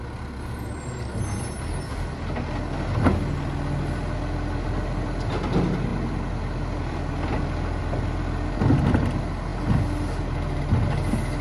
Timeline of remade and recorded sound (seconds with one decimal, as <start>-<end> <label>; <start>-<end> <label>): 0.0-11.4 recorded